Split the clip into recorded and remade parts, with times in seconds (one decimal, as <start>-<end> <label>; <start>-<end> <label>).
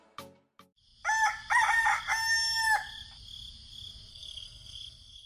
0.0-4.1 recorded; 4.1-5.3 remade